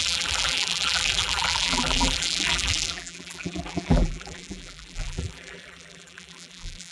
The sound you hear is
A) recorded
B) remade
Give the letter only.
B